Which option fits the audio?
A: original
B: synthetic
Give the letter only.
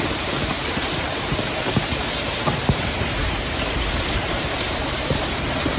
B